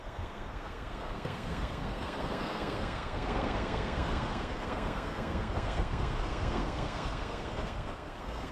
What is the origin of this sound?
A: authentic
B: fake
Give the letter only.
B